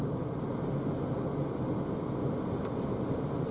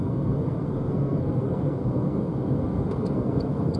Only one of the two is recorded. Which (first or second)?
first